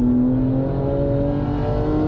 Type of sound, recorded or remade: recorded